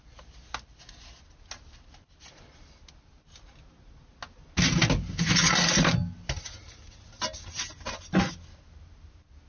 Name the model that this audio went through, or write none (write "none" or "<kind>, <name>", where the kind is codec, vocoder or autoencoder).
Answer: none